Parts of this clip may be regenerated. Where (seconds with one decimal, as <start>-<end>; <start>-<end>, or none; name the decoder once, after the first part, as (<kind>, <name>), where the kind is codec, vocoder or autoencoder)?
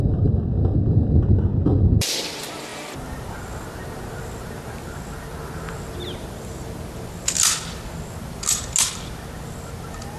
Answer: none